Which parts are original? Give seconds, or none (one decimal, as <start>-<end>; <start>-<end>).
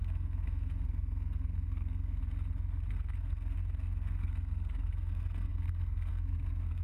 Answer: 2.2-2.9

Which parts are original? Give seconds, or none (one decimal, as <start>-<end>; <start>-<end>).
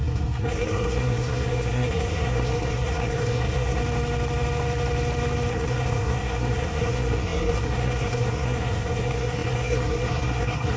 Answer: 3.8-5.5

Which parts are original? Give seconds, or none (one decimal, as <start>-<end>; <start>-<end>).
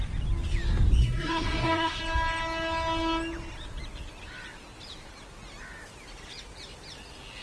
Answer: 0.0-1.0; 2.0-7.4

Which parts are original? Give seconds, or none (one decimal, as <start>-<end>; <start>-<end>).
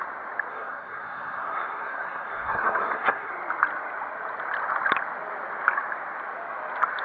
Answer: 0.0-0.5; 3.3-7.0